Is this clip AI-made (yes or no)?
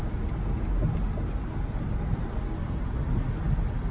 no